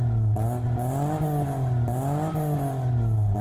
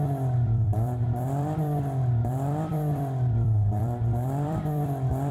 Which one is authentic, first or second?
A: first